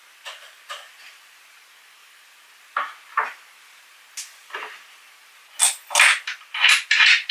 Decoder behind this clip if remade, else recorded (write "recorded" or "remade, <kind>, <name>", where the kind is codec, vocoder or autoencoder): recorded